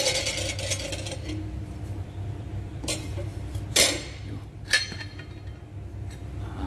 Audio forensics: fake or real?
real